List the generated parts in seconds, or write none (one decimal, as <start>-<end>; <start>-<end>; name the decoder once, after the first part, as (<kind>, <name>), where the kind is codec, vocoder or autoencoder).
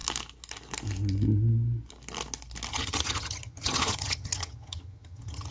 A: 2.7-5.5 (vocoder, HiFi-GAN)